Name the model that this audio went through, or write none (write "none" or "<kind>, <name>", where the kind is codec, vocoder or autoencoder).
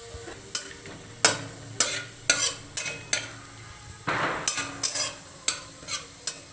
none